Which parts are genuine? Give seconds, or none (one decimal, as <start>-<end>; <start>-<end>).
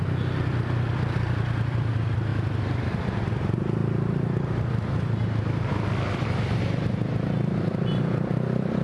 none